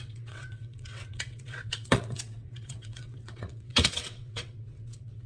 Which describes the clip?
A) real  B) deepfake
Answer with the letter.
B